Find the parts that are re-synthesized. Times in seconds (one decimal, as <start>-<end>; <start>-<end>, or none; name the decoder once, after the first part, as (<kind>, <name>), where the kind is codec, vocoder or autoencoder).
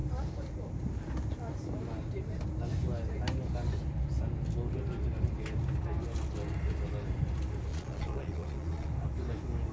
7.7-8.9 (vocoder, Vocos)